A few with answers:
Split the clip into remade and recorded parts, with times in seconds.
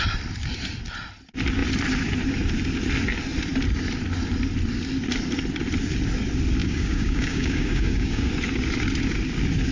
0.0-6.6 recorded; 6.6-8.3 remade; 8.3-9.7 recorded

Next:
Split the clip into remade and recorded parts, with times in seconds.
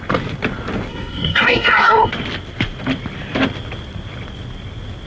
0.0-0.9 recorded; 0.9-2.1 remade; 2.1-5.1 recorded